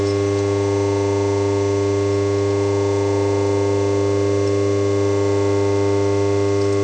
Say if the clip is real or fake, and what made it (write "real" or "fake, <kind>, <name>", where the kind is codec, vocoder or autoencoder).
real